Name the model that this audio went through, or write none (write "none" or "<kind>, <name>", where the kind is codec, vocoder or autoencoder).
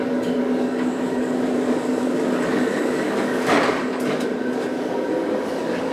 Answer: codec, DAC